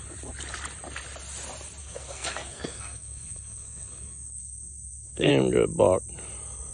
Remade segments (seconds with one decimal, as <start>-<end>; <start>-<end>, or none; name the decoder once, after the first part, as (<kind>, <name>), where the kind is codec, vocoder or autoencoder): 1.8-5.3 (codec, SNAC)